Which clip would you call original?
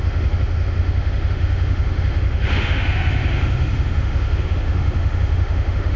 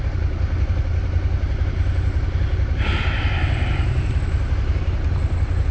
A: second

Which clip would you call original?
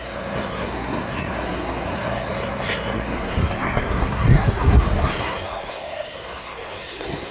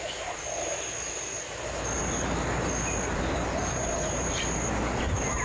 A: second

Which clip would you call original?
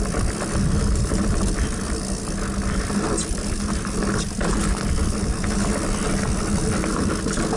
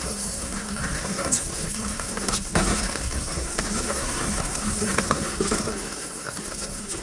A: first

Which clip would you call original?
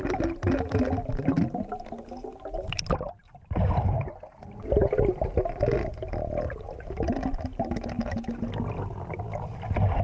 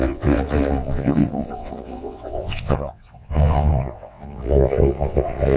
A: first